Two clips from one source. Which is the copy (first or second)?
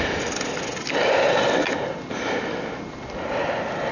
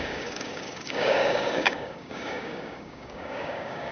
second